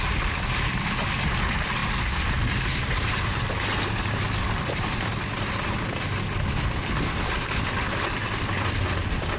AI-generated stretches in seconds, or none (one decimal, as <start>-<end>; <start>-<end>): none